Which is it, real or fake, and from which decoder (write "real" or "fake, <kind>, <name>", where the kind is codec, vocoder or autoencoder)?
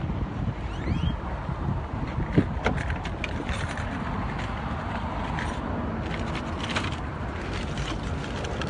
real